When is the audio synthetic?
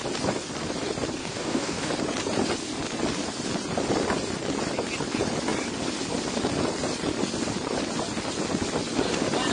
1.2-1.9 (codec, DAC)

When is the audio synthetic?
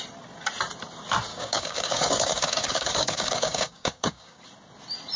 1.3-4.4 (codec, DAC)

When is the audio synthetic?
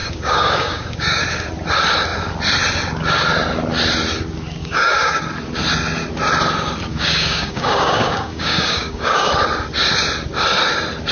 0.0-1.2 (codec, DAC); 4.6-5.2; 6.9-9.3